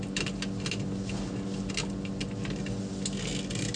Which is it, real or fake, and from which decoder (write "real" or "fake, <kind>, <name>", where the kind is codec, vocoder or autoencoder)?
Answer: real